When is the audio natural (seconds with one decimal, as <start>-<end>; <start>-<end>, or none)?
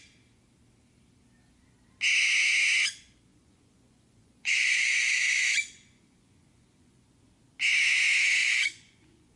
0.0-3.3; 7.2-8.4